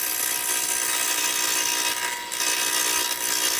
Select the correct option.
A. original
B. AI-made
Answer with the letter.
A